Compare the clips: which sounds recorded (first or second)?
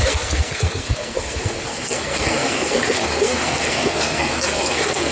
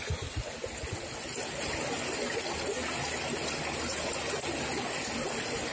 second